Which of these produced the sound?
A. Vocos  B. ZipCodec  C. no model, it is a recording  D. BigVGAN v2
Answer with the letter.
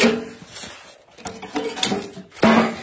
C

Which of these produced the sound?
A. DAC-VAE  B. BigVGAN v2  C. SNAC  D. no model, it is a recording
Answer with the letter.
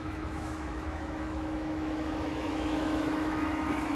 A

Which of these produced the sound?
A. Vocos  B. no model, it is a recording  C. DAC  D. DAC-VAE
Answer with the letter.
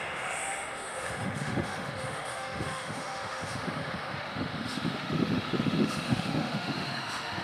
D